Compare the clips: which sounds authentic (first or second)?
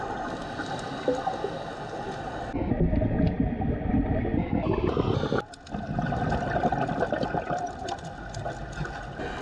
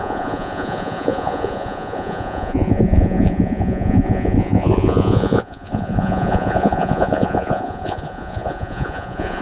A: first